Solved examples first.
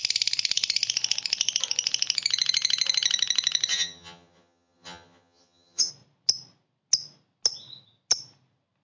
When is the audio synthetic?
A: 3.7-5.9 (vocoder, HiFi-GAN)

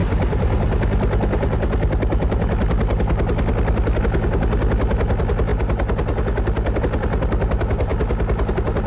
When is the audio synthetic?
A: none

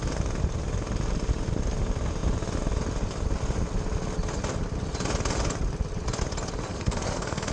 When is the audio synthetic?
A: 6.7-7.5 (codec, SNAC)

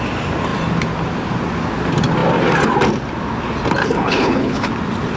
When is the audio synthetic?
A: 3.8-4.7 (codec, HILCodec)

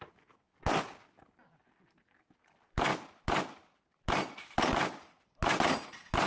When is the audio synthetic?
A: none

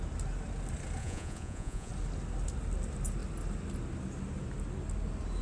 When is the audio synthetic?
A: 1.0-1.9 (vocoder, Vocos)

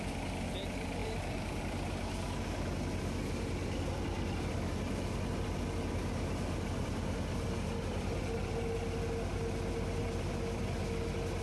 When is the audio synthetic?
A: 1.0-1.6 (vocoder, BigVGAN v2)